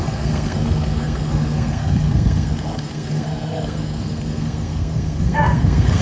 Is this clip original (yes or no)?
no